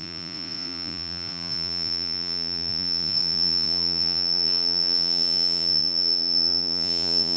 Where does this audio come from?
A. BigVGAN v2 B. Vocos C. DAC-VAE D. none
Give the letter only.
B